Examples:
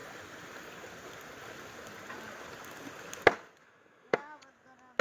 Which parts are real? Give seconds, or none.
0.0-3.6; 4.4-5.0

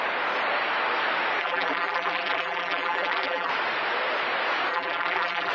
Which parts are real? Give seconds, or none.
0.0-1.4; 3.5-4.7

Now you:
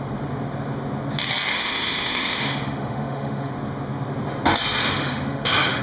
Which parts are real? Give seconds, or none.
0.0-1.5; 3.5-4.8